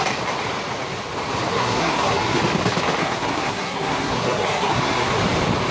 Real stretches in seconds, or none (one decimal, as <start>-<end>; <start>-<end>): 0.0-1.5; 2.4-3.0; 5.1-5.7